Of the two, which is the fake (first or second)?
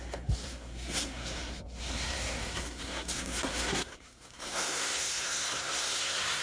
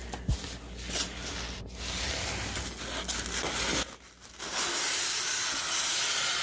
first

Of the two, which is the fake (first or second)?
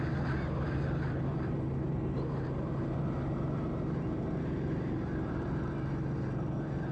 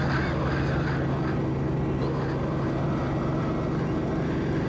first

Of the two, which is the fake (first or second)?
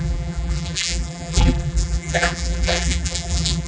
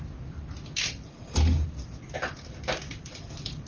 first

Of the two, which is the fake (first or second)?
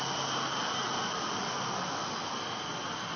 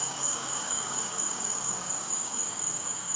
second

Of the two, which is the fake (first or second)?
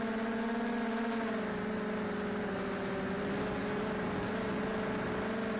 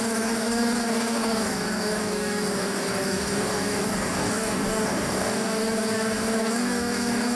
second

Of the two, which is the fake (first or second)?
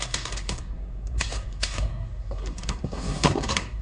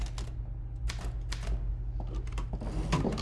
first